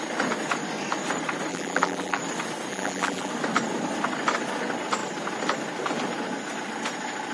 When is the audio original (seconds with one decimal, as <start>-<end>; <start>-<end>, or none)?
0.0-1.5; 2.2-2.7; 3.3-7.3